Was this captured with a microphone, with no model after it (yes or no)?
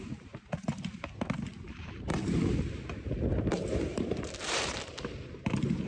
no